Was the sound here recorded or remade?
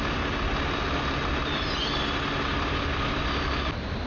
recorded